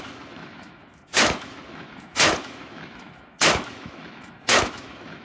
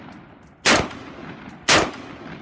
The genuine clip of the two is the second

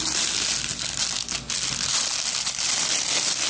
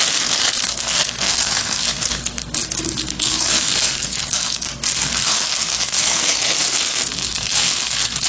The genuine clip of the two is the first